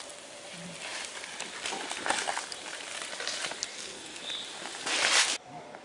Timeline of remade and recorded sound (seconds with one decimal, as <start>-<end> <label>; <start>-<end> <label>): 0.0-3.7 recorded; 3.7-4.2 remade; 4.2-5.8 recorded

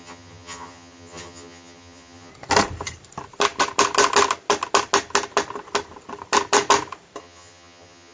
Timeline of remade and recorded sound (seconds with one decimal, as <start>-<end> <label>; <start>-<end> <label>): 0.0-2.3 remade; 2.3-7.2 recorded; 7.2-8.1 remade

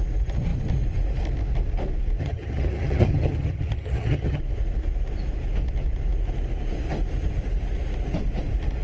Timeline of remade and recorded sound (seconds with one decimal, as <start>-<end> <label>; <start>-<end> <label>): 0.0-2.2 recorded; 2.2-4.4 remade; 4.4-8.8 recorded